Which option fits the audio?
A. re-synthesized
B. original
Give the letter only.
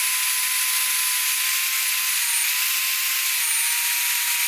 B